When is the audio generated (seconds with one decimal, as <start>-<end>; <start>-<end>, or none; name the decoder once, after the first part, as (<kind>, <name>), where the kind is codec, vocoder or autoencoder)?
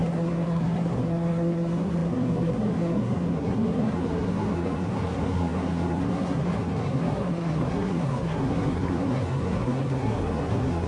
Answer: 0.0-10.9 (codec, SNAC)